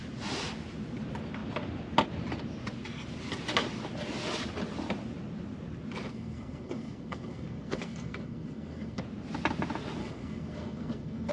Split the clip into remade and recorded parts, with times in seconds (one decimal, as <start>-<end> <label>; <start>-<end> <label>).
0.0-6.1 recorded; 6.1-9.0 remade; 9.0-10.0 recorded; 10.0-11.3 remade